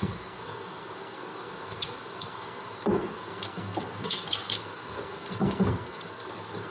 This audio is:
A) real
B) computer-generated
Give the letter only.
B